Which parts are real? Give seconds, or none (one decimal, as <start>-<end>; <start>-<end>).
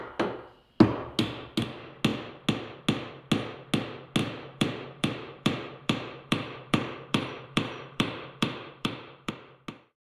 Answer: 0.0-4.2; 9.3-10.1